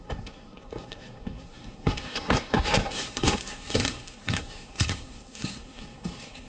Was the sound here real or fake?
fake